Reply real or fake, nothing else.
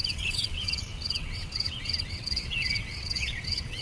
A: fake